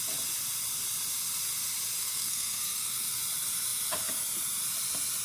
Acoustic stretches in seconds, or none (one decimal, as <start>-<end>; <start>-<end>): 0.0-2.0; 3.2-5.2